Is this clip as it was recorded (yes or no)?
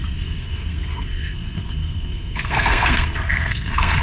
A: no